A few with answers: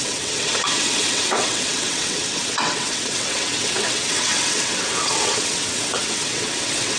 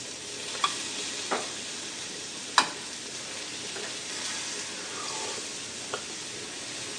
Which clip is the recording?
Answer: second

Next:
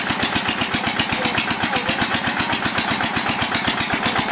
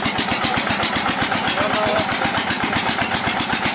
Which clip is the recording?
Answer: first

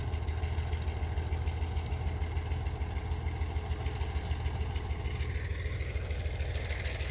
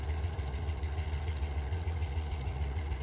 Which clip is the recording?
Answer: first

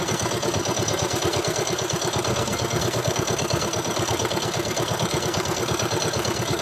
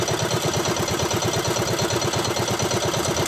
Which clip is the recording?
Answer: second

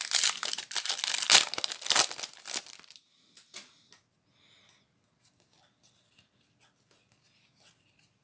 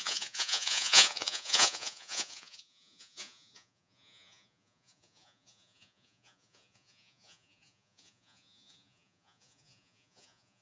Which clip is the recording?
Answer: first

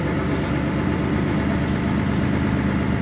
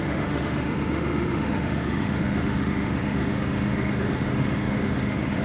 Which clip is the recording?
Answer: first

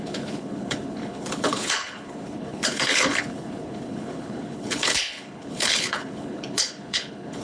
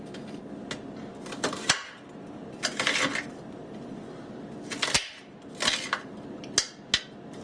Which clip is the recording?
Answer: second